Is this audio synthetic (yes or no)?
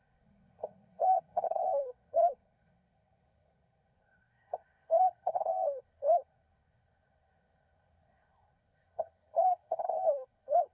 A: yes